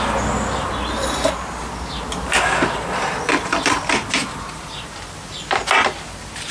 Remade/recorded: recorded